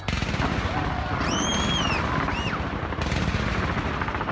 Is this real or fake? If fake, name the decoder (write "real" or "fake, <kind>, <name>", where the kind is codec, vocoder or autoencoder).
real